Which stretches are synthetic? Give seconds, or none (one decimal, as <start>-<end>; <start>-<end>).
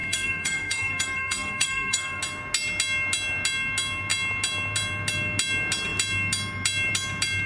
0.0-2.2